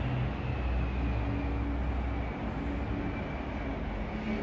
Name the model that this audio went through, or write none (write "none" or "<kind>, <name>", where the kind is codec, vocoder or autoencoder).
none